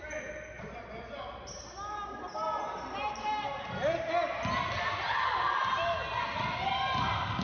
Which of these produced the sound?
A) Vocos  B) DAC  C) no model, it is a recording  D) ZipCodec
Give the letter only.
C